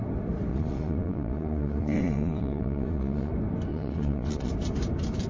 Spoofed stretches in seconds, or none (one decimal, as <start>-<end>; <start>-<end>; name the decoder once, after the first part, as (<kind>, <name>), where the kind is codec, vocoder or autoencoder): 0.5-3.3 (vocoder, Vocos); 3.7-4.5